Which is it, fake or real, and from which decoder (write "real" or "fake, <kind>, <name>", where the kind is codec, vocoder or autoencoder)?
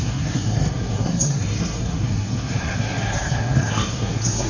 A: fake, codec, SNAC